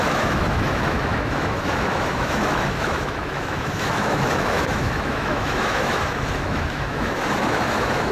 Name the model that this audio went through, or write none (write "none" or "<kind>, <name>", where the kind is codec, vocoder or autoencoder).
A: autoencoder, DAC-VAE